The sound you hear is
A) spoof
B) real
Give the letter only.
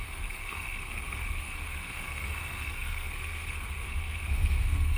A